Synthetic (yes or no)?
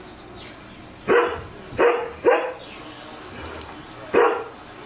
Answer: no